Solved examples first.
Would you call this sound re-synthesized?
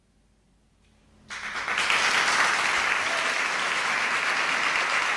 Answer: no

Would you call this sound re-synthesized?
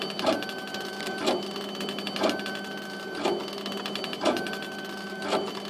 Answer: no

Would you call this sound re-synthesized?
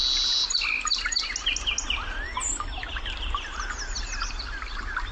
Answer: no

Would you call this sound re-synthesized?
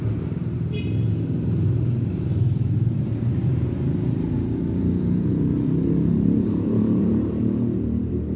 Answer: yes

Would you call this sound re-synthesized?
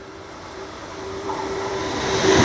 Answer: yes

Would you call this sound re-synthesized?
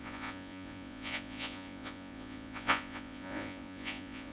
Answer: yes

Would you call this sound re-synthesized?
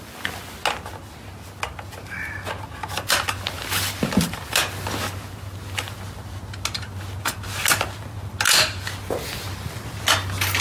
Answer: no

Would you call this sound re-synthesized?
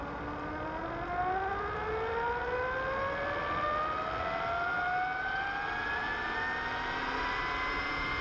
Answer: no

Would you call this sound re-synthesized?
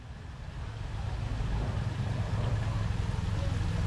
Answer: no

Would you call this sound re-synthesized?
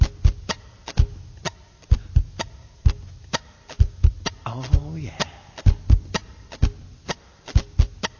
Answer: no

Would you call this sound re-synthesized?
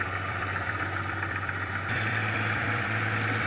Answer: yes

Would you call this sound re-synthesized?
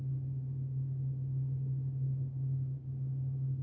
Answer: no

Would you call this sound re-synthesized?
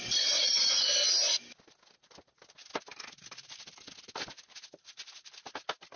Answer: no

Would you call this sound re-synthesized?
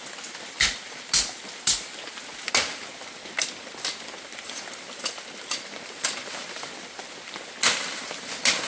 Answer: no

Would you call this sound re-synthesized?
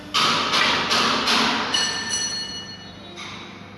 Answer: no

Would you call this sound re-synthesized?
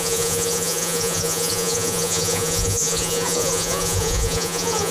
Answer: yes